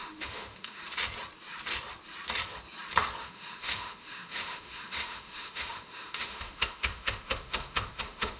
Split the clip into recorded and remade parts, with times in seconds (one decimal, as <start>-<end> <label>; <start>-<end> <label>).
0.0-0.8 remade; 0.8-3.2 recorded; 3.2-8.4 remade